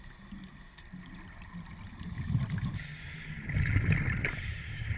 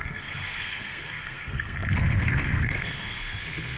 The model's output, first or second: second